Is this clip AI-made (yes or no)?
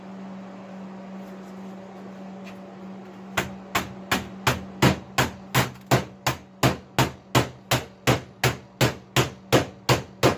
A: no